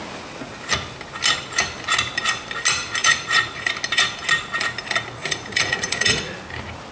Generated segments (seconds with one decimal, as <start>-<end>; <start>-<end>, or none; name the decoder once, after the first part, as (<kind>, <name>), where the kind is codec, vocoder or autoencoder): 3.0-3.7 (vocoder, Vocos); 5.2-6.3